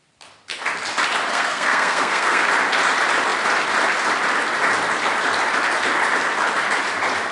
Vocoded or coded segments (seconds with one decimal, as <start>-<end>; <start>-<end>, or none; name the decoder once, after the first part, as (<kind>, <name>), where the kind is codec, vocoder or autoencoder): 1.3-2.5 (codec, SNAC)